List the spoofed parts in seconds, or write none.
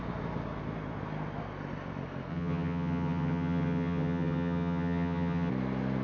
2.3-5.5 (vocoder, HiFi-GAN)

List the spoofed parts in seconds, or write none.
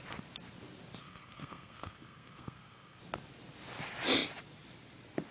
1.0-3.0 (codec, SNAC)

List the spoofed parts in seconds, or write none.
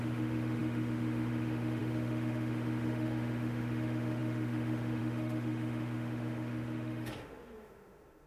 0.0-8.3 (autoencoder, DAC-VAE)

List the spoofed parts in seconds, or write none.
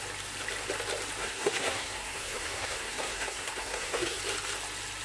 1.2-4.2 (codec, SNAC)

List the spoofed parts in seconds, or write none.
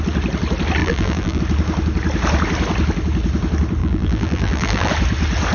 0.8-1.4 (vocoder, BigVGAN v2); 3.8-4.9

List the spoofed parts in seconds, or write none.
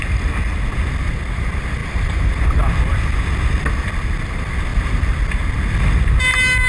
1.8-2.8 (vocoder, BigVGAN v2)